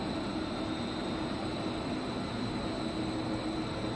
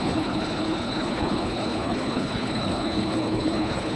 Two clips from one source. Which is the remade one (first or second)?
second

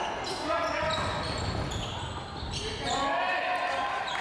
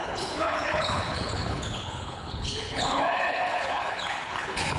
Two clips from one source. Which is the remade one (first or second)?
second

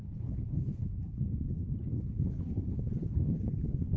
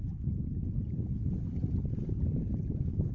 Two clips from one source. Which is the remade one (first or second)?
first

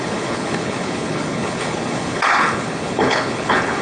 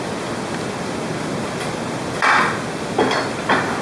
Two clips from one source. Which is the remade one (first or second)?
first